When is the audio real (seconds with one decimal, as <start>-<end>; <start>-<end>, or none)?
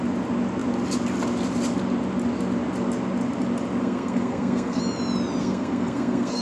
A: 0.0-3.8; 4.8-5.4